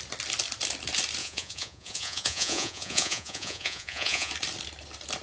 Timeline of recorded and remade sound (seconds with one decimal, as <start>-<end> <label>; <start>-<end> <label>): 0.0-1.2 recorded; 1.2-4.3 remade; 4.3-5.2 recorded